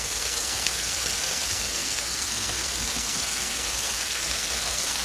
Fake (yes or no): yes